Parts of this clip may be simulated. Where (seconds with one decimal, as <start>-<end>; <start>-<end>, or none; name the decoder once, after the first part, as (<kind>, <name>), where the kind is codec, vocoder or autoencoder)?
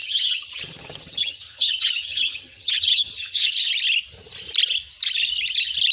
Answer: 0.0-3.5 (vocoder, HiFi-GAN)